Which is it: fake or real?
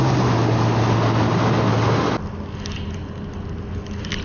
real